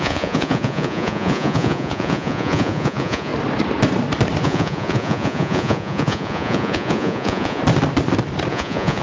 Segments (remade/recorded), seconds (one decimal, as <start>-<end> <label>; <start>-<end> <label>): 0.0-3.3 remade; 3.3-4.4 recorded; 4.4-7.6 remade; 7.6-8.5 recorded; 8.5-9.0 remade